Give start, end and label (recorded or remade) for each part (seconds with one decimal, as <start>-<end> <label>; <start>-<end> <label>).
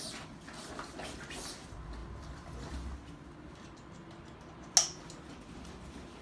0.0-6.2 recorded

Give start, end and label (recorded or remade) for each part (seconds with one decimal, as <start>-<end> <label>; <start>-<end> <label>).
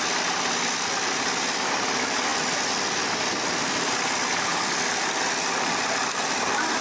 0.0-4.5 recorded; 4.5-6.8 remade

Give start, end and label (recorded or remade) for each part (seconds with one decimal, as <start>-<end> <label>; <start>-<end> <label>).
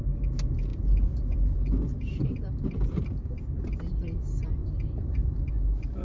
0.0-0.7 recorded; 0.7-3.3 remade; 3.3-4.6 recorded; 4.6-5.4 remade; 5.4-6.0 recorded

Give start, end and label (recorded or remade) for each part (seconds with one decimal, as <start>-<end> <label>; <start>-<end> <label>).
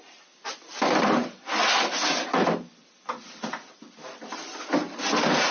0.0-1.2 remade; 1.2-2.7 recorded; 2.7-5.5 remade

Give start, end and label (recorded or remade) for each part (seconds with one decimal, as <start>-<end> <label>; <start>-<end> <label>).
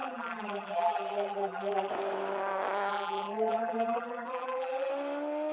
0.0-1.9 remade; 1.9-2.9 recorded; 2.9-4.9 remade; 4.9-5.5 recorded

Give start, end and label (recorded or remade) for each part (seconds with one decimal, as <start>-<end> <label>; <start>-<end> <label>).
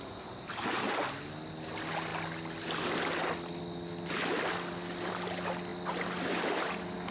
0.0-7.1 recorded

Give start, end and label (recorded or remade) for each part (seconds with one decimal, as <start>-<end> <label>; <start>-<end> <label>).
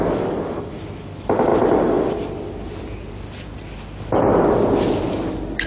0.0-5.7 recorded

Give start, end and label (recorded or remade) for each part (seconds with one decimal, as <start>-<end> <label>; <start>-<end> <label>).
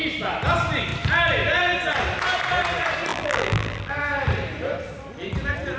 0.0-3.1 recorded; 3.1-3.9 remade; 3.9-5.8 recorded